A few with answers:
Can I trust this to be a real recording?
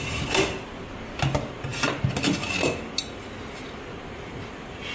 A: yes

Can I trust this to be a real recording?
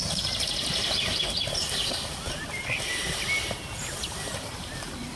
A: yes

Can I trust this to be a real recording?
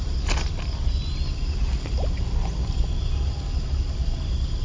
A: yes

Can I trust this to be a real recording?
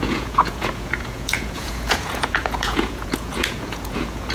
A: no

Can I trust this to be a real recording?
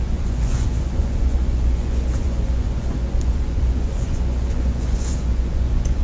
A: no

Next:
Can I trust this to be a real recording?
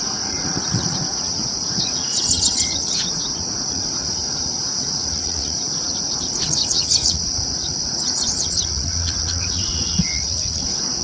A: no